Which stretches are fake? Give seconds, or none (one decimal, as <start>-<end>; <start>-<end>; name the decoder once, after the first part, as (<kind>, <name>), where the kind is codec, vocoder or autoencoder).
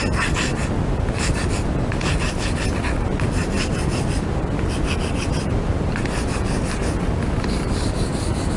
none